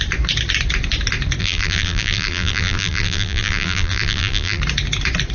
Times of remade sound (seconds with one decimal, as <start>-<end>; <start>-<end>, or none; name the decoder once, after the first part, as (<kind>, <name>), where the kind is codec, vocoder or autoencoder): 1.4-4.6 (vocoder, BigVGAN v2)